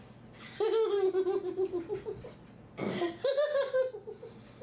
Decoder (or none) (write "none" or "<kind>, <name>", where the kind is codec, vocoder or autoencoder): none